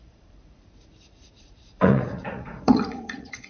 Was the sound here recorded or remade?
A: remade